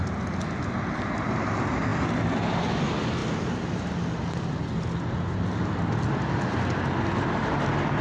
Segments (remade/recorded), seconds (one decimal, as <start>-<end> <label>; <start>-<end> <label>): 0.0-8.0 recorded